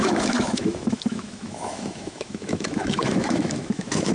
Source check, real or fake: fake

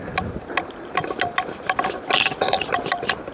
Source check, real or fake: real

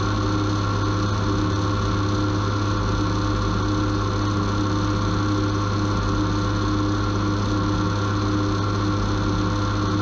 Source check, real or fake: real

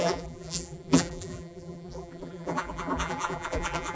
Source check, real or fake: fake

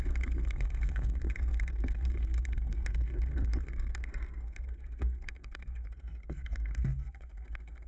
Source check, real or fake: fake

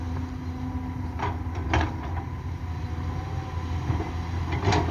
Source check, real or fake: real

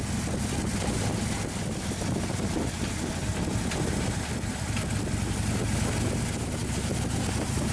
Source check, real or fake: real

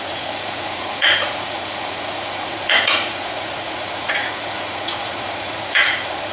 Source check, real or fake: fake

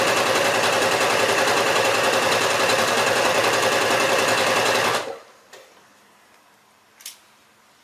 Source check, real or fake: fake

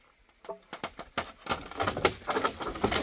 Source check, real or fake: real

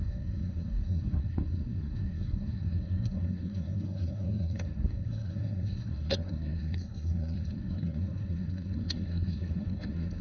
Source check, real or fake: fake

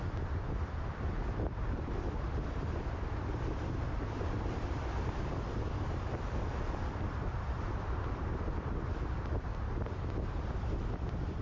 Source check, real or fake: fake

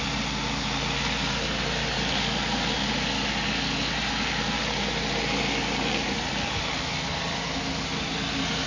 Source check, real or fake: real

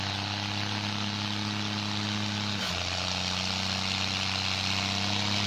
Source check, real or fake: real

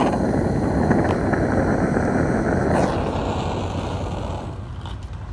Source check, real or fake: real